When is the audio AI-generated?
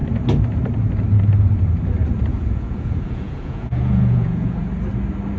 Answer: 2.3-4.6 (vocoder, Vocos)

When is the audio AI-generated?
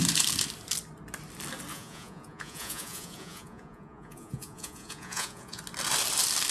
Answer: 1.7-5.6 (vocoder, Vocos)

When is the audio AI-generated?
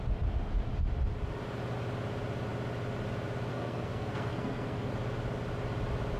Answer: 3.5-4.9 (codec, SNAC)